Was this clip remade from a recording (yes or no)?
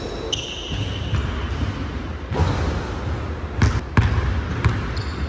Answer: no